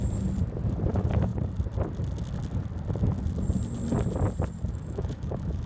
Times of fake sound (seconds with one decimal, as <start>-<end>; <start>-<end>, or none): 0.9-1.3; 4.7-5.7